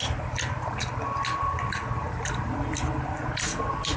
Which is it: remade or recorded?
recorded